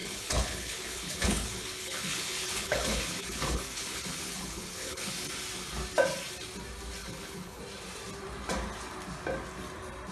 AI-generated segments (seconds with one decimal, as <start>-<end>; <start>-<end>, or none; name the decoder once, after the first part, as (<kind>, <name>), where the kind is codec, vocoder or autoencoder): 0.0-5.1 (codec, HILCodec); 7.0-7.6